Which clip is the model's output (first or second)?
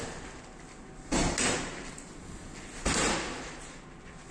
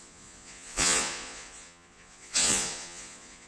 second